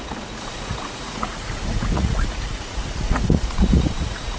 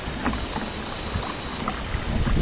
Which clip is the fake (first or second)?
first